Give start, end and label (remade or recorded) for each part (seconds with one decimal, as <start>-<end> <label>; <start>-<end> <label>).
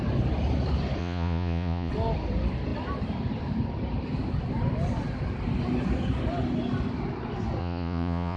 0.0-1.0 recorded; 1.0-1.9 remade; 1.9-7.6 recorded; 7.6-8.4 remade